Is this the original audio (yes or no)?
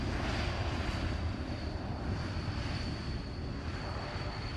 yes